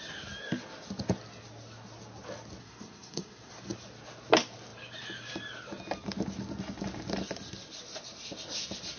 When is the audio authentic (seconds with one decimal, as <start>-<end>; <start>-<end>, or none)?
0.0-2.6; 3.5-9.0